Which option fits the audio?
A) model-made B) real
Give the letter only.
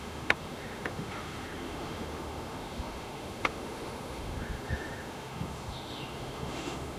A